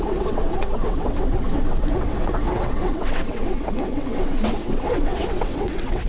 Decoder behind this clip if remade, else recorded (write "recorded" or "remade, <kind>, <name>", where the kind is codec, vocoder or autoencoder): remade, vocoder, WaveNeXt